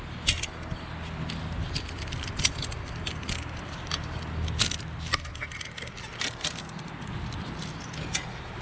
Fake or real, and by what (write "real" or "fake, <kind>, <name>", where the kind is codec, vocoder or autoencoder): real